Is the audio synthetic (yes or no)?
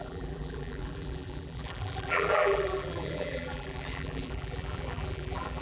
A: yes